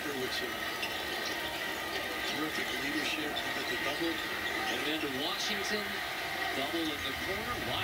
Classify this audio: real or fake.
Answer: real